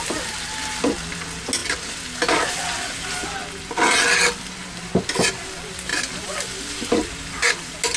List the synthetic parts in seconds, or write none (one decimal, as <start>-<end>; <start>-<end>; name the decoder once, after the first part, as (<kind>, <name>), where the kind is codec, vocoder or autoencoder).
none